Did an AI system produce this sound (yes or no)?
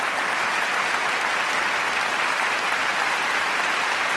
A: no